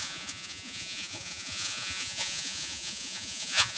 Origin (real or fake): fake